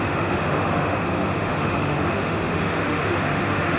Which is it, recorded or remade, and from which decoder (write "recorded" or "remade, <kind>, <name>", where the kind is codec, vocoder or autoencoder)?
remade, autoencoder, DAC-VAE